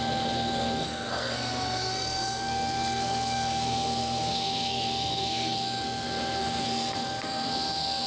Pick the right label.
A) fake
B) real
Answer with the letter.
A